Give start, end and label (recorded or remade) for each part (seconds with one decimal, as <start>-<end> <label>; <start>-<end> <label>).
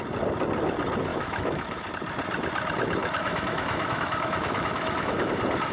0.0-1.1 recorded; 1.1-1.9 remade; 1.9-3.0 recorded; 3.0-5.3 remade; 5.3-5.7 recorded